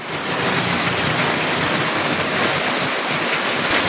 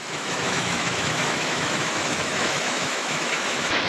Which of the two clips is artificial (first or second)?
second